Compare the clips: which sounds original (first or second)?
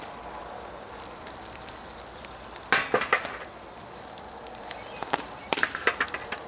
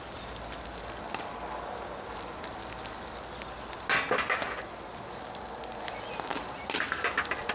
second